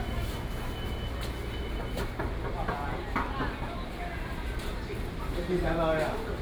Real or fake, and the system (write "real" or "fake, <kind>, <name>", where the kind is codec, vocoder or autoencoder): real